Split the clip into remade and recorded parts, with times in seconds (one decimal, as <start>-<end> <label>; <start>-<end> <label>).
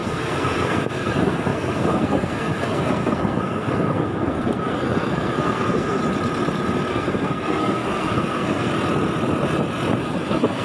0.0-6.0 remade; 6.0-6.9 recorded; 6.9-8.7 remade; 8.7-10.0 recorded; 10.0-10.6 remade